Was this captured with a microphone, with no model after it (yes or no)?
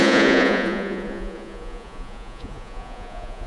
no